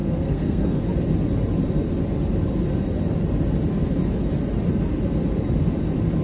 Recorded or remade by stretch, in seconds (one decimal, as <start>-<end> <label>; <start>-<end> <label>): 0.0-0.8 remade; 0.8-6.2 recorded